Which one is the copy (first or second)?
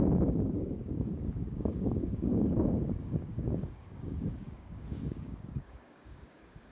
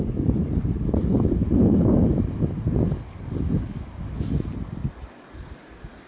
first